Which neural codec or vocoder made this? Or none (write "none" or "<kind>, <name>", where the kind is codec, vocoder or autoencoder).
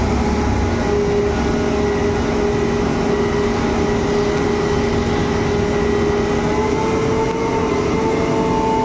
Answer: none